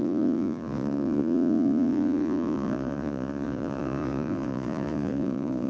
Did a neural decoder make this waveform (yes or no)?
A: yes